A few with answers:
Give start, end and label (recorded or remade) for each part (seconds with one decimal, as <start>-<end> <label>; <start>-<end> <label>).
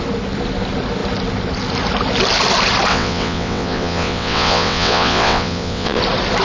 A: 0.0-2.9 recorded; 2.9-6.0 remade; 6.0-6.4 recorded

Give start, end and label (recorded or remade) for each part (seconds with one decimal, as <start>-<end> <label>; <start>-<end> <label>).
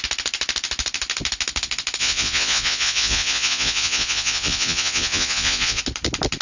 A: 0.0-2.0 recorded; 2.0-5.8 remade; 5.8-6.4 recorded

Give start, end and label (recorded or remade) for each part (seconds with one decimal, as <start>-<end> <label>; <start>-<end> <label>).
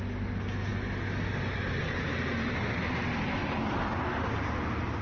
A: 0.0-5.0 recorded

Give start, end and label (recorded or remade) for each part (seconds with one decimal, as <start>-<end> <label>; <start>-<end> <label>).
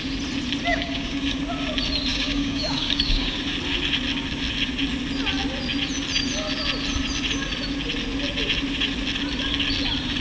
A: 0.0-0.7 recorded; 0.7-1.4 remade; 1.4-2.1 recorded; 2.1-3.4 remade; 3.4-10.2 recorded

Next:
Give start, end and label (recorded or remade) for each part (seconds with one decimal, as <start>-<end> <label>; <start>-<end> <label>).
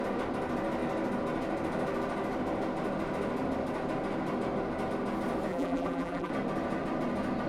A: 0.0-5.5 recorded; 5.5-6.3 remade; 6.3-7.5 recorded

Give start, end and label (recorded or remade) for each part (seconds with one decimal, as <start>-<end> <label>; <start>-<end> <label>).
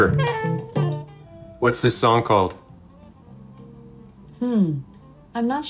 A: 0.0-1.2 recorded; 1.2-1.9 remade; 1.9-5.7 recorded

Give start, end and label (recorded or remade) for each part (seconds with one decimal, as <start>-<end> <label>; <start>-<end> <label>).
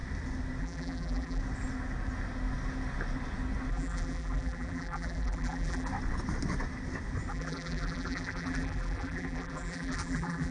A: 0.0-0.6 recorded; 0.6-1.4 remade; 1.4-3.7 recorded; 3.7-5.9 remade; 5.9-7.3 recorded; 7.3-10.5 remade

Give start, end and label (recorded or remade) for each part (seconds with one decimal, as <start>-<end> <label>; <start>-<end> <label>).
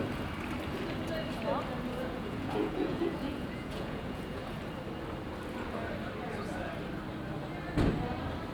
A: 0.0-2.0 recorded; 2.0-4.4 remade; 4.4-8.5 recorded